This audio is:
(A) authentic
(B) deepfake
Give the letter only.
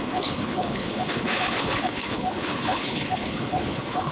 B